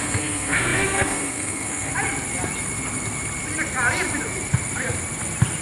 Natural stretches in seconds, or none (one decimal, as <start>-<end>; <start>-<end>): 1.9-5.6